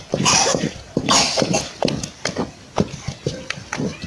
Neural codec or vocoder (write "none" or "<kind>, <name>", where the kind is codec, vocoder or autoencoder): none